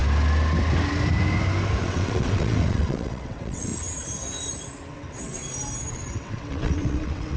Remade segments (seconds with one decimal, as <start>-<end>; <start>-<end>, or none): 1.8-3.7; 4.9-5.4; 5.9-7.4